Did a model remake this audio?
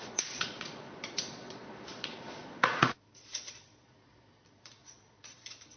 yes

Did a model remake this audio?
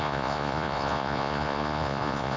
yes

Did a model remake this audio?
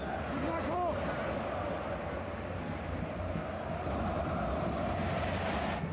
no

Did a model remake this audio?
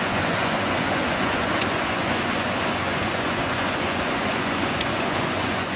yes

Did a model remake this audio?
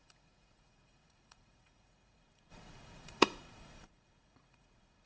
yes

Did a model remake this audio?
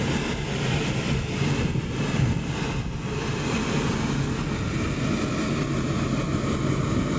no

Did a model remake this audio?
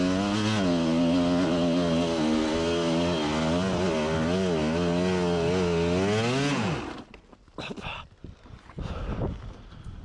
no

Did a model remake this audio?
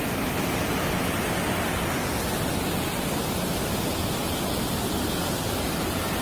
no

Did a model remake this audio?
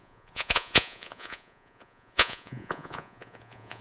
yes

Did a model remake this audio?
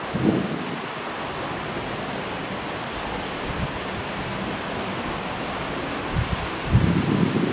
no